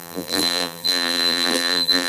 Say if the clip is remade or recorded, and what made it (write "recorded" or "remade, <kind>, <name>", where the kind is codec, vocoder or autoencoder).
remade, vocoder, BigVGAN v2